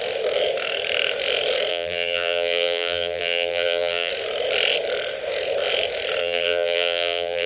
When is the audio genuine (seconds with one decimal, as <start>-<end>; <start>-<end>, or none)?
0.0-1.7; 4.1-6.2